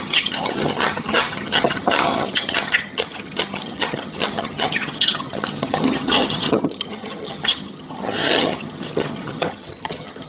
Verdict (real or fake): fake